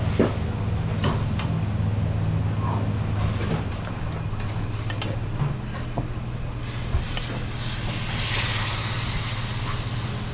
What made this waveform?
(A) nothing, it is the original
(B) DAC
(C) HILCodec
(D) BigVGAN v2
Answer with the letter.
A